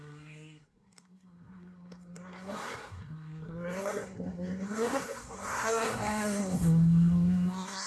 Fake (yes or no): yes